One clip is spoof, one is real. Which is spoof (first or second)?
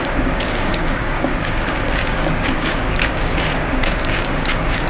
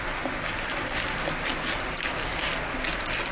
first